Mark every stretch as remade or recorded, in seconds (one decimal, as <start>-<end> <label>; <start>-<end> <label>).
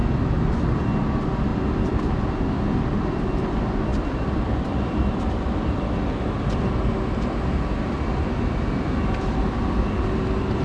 0.0-1.5 recorded; 1.5-2.0 remade; 2.0-3.9 recorded; 3.9-6.7 remade; 6.7-10.6 recorded